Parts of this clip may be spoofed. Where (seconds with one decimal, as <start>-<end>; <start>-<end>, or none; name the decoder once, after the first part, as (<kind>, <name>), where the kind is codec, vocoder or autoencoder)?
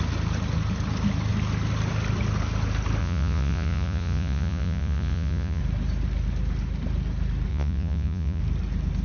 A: 3.0-5.6 (vocoder, Vocos); 7.5-8.4